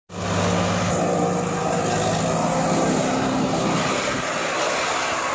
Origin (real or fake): real